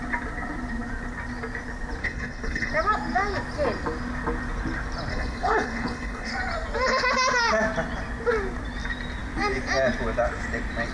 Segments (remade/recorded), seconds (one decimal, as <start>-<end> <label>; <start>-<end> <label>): 0.0-2.0 recorded; 2.0-2.7 remade; 2.7-5.1 recorded; 5.1-6.3 remade; 6.3-10.9 recorded